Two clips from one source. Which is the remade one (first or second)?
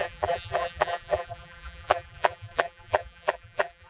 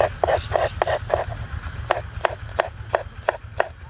first